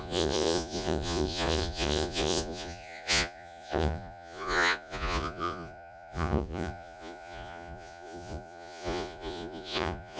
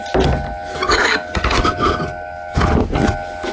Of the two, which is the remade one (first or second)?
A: first